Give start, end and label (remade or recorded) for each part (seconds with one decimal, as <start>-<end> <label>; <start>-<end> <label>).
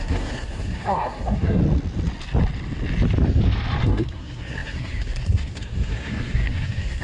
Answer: 0.0-1.6 remade; 1.6-3.8 recorded; 3.8-7.0 remade